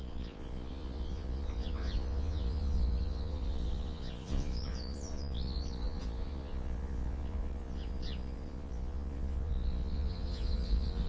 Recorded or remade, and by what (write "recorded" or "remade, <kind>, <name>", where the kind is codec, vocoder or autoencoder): remade, vocoder, Vocos